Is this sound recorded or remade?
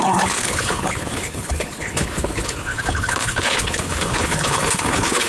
remade